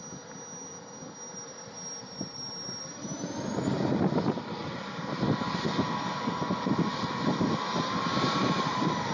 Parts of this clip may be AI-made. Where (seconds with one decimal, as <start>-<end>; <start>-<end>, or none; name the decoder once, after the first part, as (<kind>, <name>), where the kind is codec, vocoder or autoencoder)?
2.0-2.9 (vocoder, BigVGAN v2); 4.6-5.8; 8.1-9.1